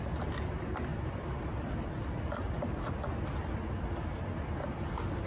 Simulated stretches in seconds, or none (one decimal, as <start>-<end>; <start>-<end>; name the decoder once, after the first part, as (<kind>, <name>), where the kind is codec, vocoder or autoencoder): 0.9-2.9 (vocoder, BigVGAN v2)